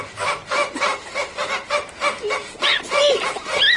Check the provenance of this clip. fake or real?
real